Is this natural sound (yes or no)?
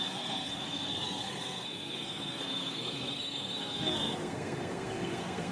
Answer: no